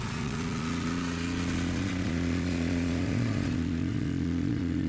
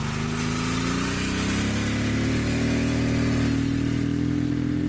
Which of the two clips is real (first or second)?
second